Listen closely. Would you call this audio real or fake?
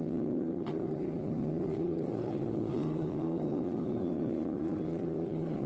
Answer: fake